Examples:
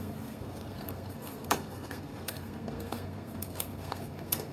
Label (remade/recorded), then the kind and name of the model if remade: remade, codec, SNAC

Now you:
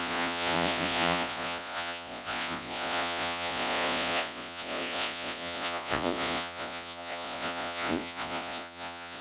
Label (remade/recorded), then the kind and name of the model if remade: remade, vocoder, Vocos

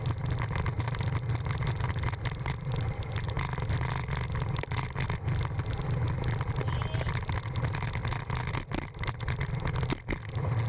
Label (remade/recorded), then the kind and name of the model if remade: recorded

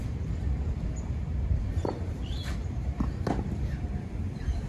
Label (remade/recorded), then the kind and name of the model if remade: remade, vocoder, BigVGAN v2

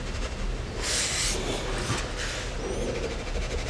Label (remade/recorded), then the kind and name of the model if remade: recorded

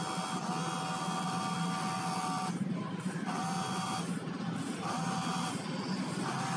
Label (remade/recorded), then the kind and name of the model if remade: recorded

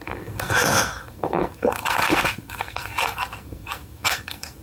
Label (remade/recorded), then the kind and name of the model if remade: remade, codec, SNAC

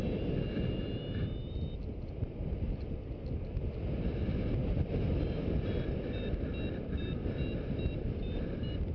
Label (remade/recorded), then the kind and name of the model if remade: recorded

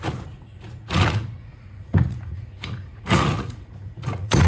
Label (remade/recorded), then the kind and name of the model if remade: remade, vocoder, Vocos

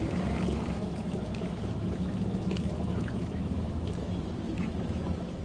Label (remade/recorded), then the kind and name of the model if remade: remade, autoencoder, DAC-VAE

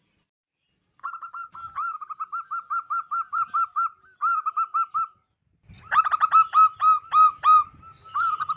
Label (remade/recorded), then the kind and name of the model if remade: recorded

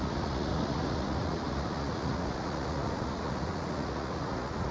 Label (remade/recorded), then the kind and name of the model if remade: remade, vocoder, Vocos